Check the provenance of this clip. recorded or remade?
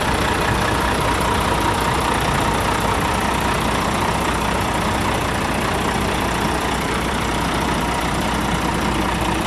remade